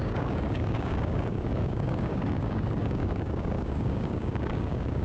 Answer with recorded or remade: remade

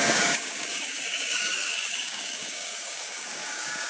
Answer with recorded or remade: remade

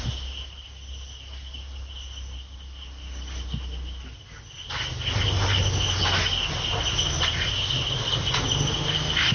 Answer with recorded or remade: recorded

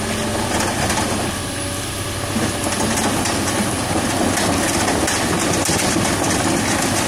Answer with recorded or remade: recorded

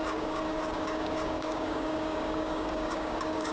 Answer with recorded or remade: remade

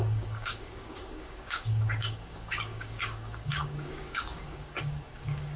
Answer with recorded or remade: remade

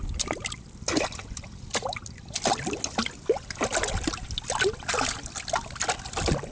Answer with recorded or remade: recorded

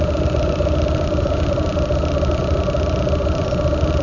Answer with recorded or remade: recorded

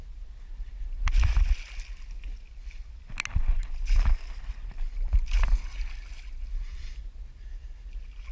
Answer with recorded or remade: recorded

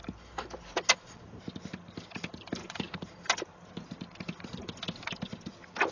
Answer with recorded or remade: recorded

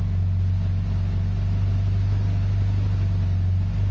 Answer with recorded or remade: recorded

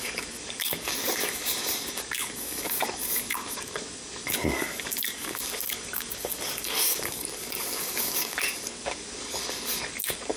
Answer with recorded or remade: remade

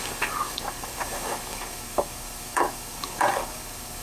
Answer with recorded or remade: remade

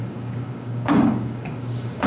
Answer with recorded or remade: remade